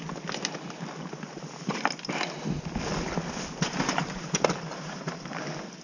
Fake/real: real